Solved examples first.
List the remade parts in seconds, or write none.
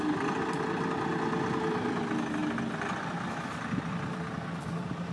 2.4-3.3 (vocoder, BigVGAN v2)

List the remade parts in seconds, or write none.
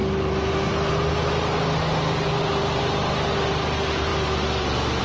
none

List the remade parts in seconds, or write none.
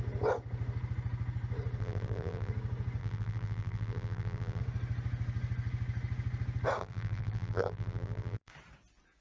1.8-2.5 (vocoder, BigVGAN v2); 3.0-4.6; 6.8-8.5